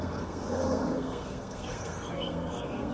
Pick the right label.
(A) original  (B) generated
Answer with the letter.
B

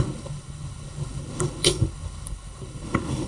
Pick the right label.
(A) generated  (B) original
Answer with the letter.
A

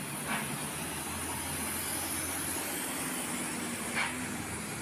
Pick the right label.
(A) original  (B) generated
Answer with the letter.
A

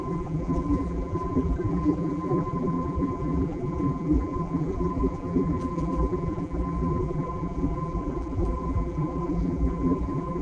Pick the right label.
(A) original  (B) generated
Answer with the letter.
B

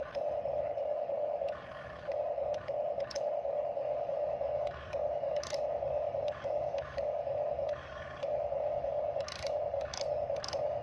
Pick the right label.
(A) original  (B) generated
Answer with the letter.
B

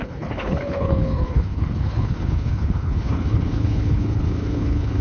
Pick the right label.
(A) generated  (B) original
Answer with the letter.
A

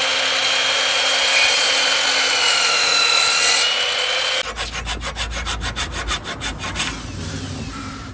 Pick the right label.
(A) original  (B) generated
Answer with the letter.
A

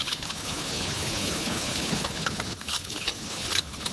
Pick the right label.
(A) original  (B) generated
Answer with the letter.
B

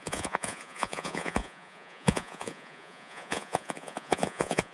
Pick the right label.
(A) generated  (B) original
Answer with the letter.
A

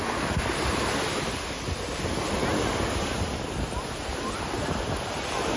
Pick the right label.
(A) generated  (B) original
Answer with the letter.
B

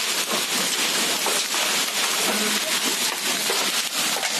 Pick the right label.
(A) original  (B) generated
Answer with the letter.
A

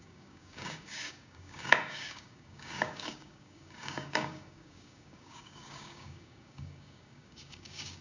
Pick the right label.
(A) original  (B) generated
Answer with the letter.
B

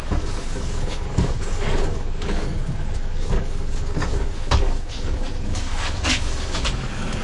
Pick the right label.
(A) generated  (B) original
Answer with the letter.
A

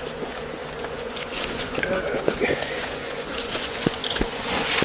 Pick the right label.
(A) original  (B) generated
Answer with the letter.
B